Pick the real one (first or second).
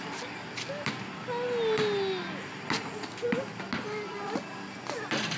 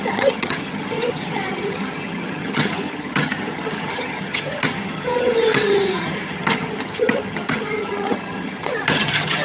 first